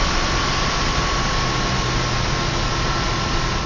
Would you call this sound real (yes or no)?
yes